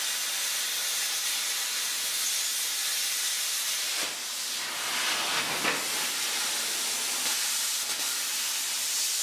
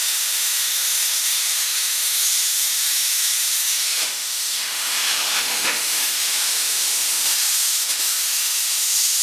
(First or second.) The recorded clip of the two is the first